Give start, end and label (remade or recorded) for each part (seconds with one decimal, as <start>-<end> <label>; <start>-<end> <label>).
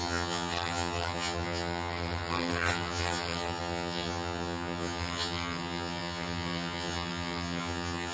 0.0-8.1 remade